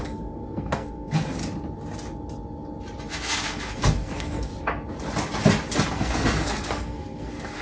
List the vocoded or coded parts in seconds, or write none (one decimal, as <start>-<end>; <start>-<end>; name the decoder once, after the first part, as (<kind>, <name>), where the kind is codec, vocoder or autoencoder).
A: 0.0-1.4 (codec, SNAC); 3.1-4.5; 5.9-7.6